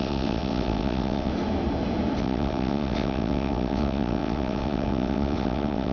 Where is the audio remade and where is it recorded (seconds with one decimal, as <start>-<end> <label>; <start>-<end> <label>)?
0.0-1.3 remade; 1.3-2.2 recorded; 2.2-5.9 remade